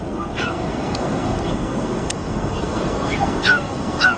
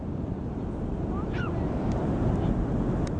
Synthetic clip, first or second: first